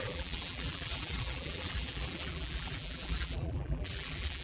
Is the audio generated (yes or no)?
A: yes